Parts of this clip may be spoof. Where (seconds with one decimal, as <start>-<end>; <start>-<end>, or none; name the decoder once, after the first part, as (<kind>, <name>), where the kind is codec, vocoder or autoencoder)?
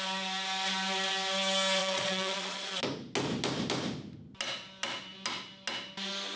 1.8-2.8 (vocoder, Vocos)